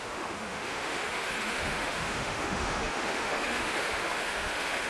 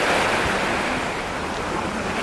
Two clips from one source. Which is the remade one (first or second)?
first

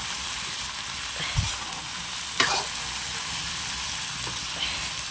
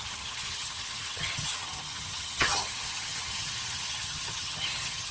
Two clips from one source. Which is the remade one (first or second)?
second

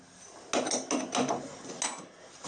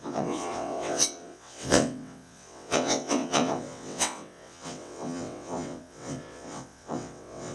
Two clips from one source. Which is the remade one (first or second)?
second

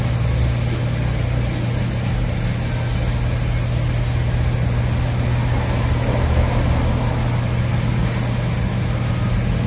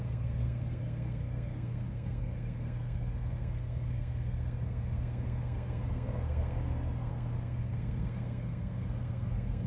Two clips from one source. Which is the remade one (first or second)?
second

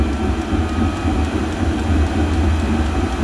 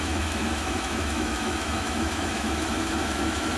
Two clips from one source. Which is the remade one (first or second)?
second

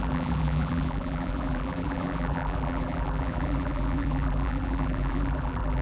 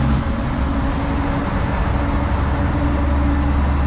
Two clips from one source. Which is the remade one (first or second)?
first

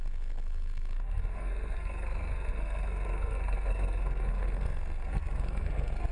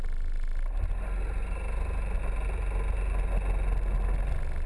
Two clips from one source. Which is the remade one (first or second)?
first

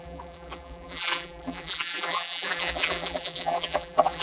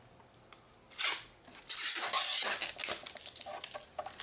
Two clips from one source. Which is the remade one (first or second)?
first